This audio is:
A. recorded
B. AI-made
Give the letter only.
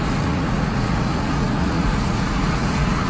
B